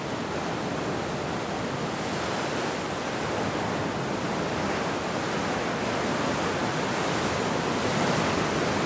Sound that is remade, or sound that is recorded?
recorded